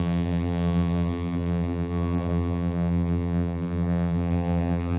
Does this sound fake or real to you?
fake